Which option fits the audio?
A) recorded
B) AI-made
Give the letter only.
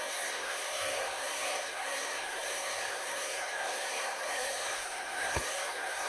B